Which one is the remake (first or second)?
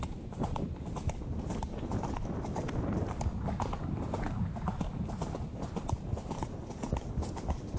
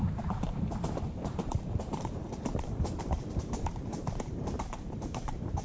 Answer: second